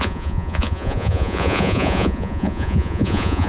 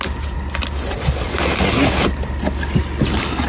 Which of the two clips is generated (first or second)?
first